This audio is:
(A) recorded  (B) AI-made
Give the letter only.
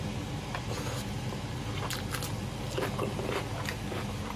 A